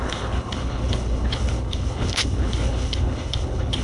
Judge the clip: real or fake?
fake